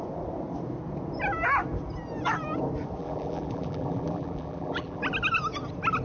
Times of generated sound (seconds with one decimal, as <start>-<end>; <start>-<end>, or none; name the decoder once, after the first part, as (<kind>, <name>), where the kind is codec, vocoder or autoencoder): 3.0-5.0 (vocoder, BigVGAN v2)